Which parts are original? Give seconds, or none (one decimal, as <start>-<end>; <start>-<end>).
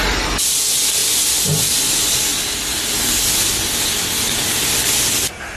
0.0-5.6